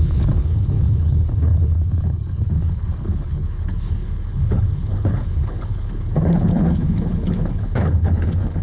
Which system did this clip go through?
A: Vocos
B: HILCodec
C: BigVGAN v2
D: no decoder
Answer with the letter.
B